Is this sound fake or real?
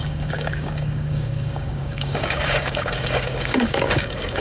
fake